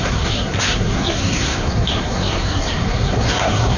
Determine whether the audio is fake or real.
fake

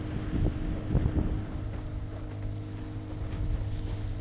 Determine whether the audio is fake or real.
real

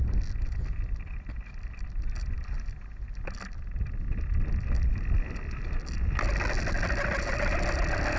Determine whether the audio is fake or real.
real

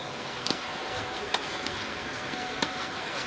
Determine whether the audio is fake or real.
fake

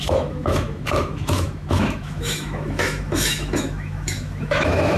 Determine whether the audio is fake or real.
fake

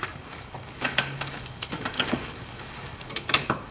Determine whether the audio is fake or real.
fake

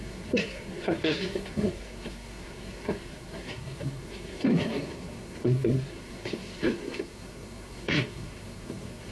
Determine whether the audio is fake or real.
fake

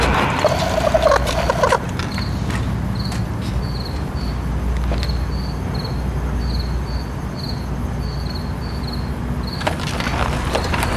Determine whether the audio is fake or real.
real